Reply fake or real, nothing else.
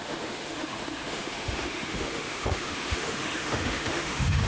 fake